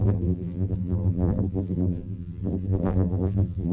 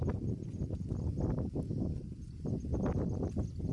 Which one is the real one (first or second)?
second